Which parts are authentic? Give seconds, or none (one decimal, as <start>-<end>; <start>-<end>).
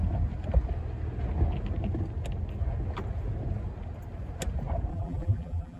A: 0.0-4.9